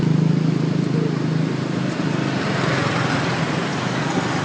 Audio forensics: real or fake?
real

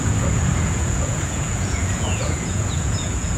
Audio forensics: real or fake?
fake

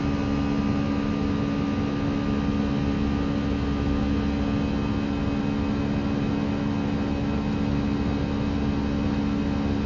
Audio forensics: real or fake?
real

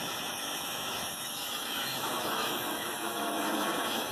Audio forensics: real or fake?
fake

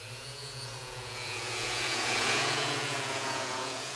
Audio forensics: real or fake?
fake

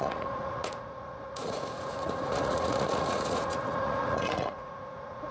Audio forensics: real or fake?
fake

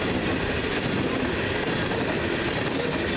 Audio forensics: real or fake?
real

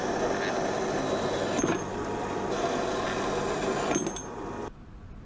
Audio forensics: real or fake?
real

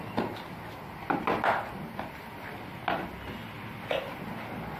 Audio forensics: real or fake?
real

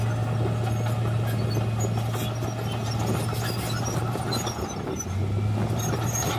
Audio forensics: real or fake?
real